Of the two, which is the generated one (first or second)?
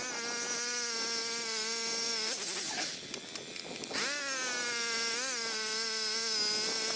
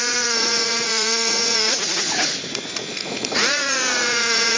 second